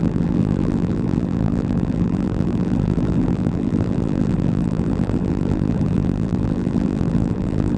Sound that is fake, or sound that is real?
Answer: fake